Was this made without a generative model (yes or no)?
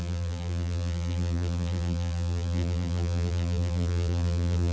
no